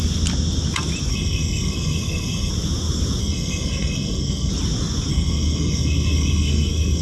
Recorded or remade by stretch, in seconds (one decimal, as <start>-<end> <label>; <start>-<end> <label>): 0.0-1.1 recorded; 1.1-2.5 remade; 2.5-3.2 recorded; 3.2-4.5 remade; 4.5-5.1 recorded; 5.1-7.0 remade